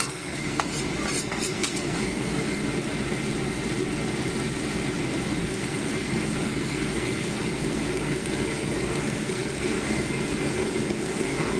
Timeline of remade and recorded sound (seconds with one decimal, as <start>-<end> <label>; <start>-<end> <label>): 0.0-0.7 remade; 0.7-1.2 recorded; 1.2-2.6 remade; 2.6-5.4 recorded; 5.4-11.6 remade